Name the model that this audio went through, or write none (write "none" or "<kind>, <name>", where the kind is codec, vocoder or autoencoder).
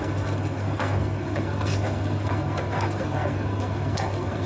codec, SNAC